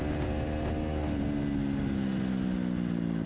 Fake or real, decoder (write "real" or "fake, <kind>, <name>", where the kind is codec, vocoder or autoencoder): real